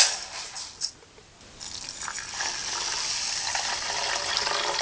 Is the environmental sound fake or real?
real